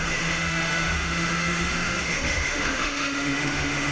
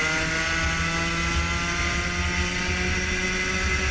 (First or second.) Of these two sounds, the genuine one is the second